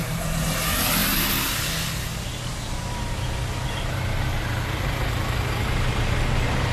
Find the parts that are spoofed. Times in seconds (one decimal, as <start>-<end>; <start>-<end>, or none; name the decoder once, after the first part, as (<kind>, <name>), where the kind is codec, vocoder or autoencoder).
none